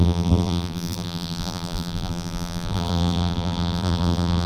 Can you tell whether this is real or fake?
fake